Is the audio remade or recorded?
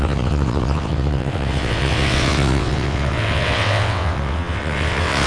remade